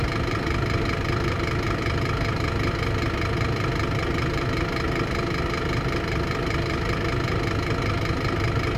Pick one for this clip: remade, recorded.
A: recorded